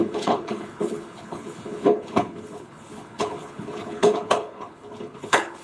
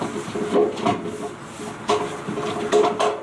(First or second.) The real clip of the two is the second